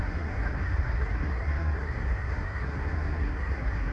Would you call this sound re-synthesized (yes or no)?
yes